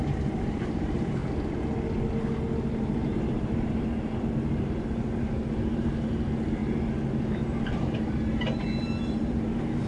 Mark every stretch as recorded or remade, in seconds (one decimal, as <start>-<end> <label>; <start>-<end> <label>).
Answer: 0.0-1.2 remade; 1.2-2.8 recorded; 2.8-6.6 remade; 6.6-7.1 recorded; 7.1-9.9 remade